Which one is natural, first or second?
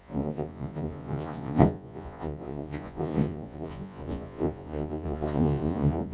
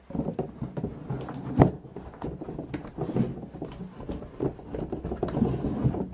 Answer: second